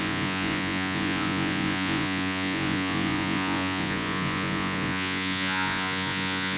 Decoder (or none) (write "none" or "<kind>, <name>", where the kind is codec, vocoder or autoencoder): vocoder, Vocos